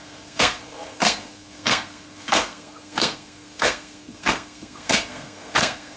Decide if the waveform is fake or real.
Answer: fake